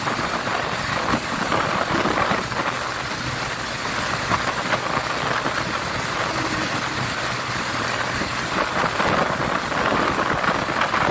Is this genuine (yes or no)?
yes